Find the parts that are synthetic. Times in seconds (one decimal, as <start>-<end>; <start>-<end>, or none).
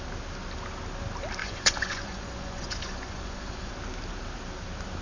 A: 1.4-3.7